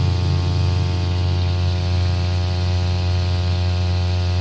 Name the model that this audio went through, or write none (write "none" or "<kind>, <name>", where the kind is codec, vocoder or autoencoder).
none